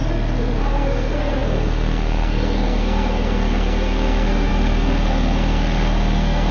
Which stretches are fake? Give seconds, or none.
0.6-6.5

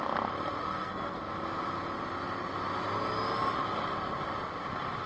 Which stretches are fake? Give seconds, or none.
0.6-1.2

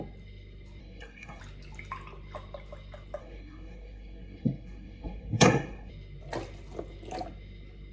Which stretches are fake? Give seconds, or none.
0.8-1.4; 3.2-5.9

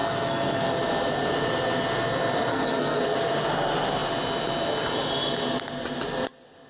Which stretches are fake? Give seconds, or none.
0.0-0.6; 2.5-3.0